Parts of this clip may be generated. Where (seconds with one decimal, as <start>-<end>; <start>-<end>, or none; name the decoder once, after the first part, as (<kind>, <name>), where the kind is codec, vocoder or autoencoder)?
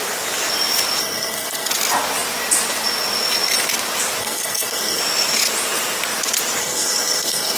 1.0-1.7 (codec, SNAC); 4.2-5.0; 6.6-7.6